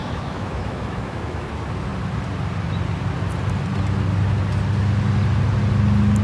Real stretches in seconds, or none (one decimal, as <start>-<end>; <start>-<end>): 1.5-6.2